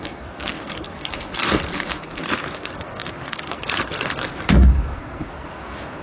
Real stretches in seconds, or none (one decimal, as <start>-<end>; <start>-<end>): none

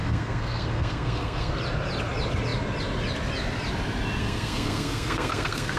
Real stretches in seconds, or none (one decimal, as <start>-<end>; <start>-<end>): 1.5-4.2

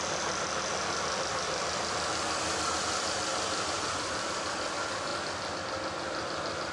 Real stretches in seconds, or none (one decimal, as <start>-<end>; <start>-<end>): 0.0-6.7